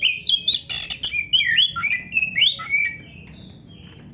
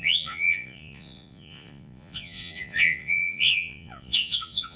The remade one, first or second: second